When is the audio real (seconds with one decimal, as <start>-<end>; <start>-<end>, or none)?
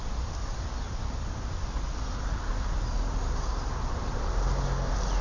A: 0.0-5.2